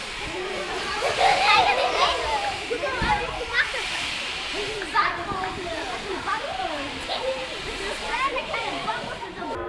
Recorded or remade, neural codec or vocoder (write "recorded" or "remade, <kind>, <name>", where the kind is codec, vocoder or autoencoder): remade, vocoder, BigVGAN v2